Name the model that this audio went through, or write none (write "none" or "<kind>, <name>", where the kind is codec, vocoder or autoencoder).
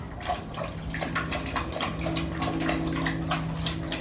none